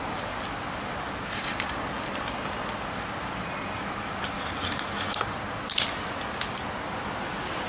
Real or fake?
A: real